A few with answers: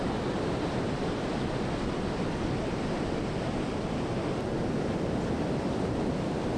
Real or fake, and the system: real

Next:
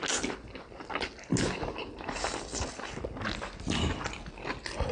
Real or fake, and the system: real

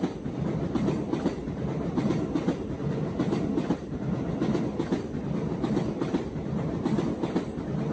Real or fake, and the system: real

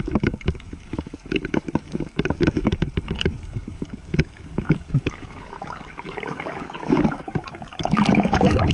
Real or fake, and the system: fake, codec, DAC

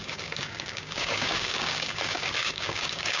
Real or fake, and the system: fake, codec, DAC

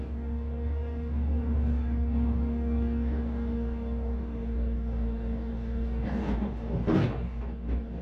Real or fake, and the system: fake, codec, DAC